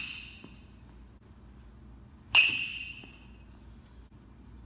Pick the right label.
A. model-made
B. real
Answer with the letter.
B